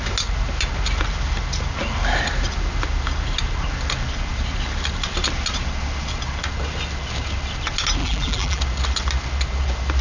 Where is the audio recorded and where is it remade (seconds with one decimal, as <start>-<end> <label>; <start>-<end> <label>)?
0.0-8.0 recorded; 8.0-8.6 remade; 8.6-10.0 recorded